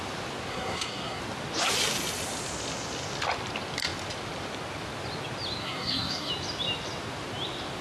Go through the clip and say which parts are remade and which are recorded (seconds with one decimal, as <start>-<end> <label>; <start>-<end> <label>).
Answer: 0.0-0.5 recorded; 0.5-1.2 remade; 1.2-5.6 recorded; 5.6-6.3 remade; 6.3-7.8 recorded